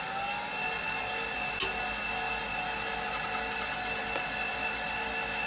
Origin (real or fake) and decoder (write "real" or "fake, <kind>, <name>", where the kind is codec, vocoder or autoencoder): real